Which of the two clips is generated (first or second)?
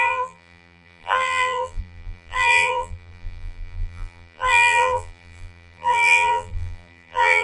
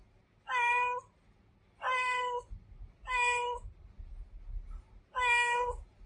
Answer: first